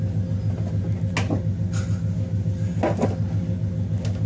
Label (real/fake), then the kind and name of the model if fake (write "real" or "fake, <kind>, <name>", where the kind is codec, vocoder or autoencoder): real